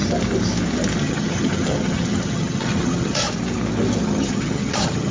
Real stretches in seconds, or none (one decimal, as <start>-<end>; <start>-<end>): 0.0-1.0; 3.2-4.0